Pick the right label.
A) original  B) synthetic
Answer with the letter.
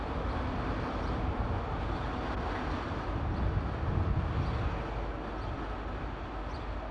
A